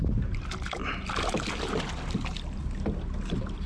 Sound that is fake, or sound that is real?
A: real